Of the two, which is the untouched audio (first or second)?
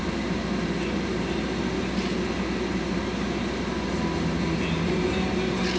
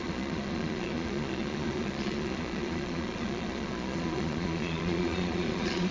first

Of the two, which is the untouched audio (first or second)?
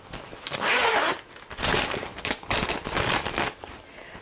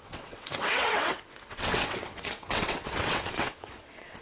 first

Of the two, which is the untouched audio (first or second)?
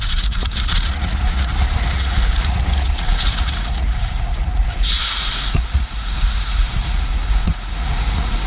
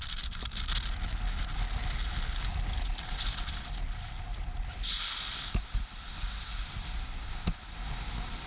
second